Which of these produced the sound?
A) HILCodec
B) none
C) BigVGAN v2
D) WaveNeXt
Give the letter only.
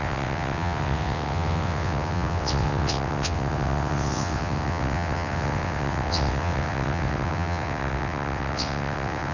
D